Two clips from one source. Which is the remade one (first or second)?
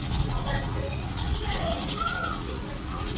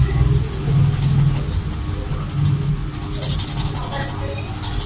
first